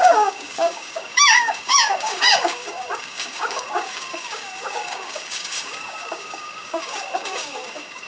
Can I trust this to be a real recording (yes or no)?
no